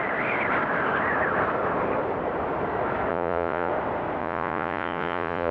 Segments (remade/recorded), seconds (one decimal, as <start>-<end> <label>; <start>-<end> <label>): 0.0-3.1 recorded; 3.1-3.7 remade; 3.7-4.2 recorded; 4.2-5.5 remade